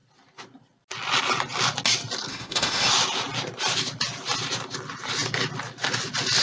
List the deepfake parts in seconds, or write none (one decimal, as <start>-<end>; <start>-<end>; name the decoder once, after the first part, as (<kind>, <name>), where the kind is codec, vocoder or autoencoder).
2.3-2.9 (autoencoder, DAC-VAE)